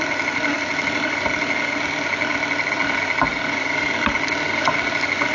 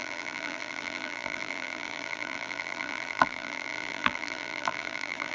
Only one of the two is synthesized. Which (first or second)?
second